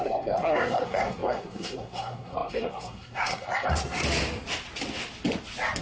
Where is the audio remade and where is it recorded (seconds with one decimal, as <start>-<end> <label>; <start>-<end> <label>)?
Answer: 0.0-4.0 remade; 4.0-5.8 recorded